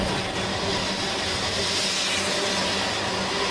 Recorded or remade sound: recorded